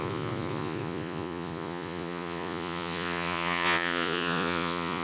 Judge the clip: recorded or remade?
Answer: remade